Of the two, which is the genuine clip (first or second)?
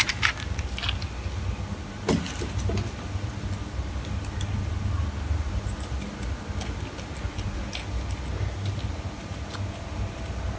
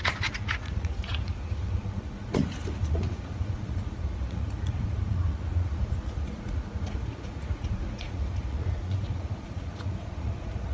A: first